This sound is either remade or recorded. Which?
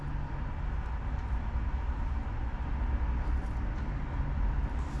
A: recorded